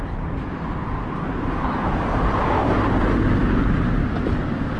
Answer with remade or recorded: recorded